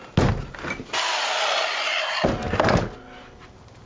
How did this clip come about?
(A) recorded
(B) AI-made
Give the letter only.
A